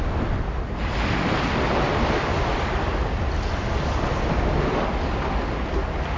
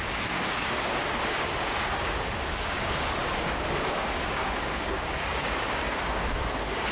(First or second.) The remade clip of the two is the second